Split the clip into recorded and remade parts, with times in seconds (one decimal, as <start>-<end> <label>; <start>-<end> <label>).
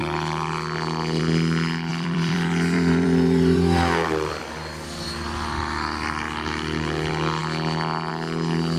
0.0-1.9 recorded; 1.9-4.4 remade; 4.4-8.8 recorded